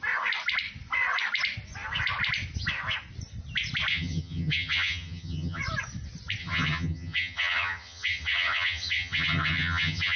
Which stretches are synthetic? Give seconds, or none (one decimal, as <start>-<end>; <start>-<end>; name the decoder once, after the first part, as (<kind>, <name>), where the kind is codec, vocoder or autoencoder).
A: 3.9-5.6 (vocoder, HiFi-GAN); 6.4-10.2